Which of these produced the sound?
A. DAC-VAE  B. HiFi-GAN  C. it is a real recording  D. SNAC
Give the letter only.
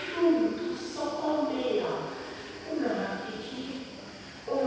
C